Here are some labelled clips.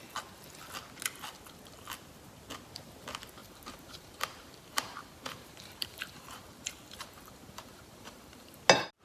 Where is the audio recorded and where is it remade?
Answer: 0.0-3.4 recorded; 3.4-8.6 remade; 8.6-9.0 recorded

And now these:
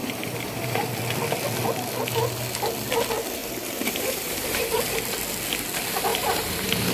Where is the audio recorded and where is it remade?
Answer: 0.0-0.9 remade; 0.9-3.4 recorded; 3.4-4.8 remade; 4.8-6.1 recorded; 6.1-6.9 remade

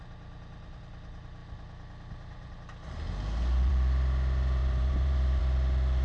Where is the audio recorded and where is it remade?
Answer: 0.0-4.6 recorded; 4.6-5.4 remade; 5.4-6.0 recorded

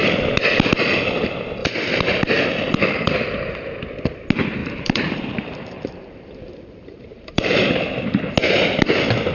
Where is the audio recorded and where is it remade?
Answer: 0.0-1.6 recorded; 1.6-3.5 remade; 3.5-4.6 recorded; 4.6-7.7 remade; 7.7-9.3 recorded

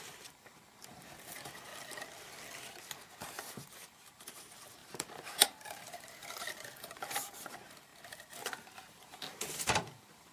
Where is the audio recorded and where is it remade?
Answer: 0.0-1.7 remade; 1.7-3.5 recorded; 3.5-10.3 remade

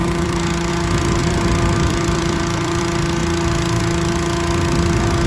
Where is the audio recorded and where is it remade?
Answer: 0.0-0.7 remade; 0.7-1.2 recorded; 1.2-2.8 remade; 2.8-5.3 recorded

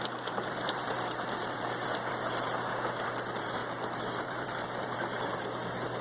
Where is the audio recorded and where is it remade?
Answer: 0.0-2.2 remade; 2.2-3.0 recorded; 3.0-3.6 remade; 3.6-4.2 recorded; 4.2-6.0 remade